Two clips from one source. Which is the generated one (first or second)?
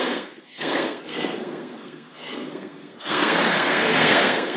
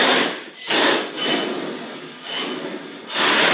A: first